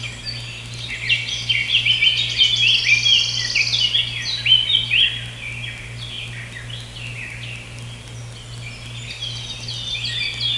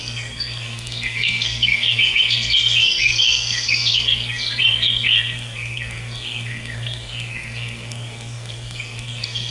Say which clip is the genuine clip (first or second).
first